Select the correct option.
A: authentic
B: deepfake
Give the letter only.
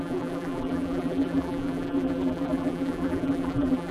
B